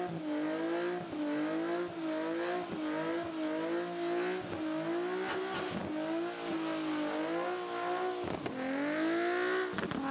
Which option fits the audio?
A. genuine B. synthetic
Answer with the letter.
A